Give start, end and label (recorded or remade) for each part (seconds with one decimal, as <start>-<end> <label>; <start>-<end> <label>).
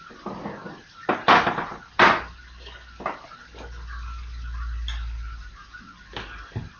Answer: 0.0-6.8 recorded